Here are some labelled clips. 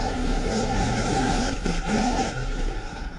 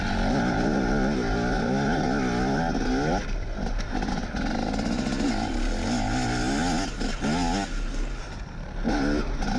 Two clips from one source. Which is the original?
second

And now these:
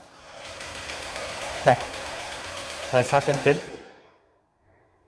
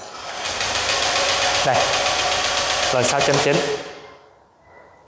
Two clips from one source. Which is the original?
second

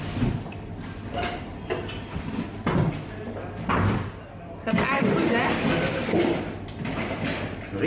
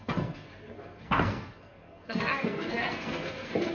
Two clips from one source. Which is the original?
first